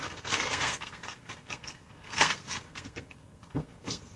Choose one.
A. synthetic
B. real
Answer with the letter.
A